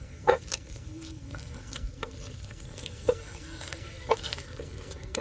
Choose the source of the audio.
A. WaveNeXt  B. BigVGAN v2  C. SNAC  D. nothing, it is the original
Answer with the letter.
C